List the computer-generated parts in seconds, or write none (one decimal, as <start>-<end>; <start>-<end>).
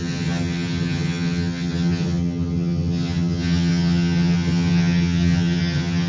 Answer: 0.0-6.1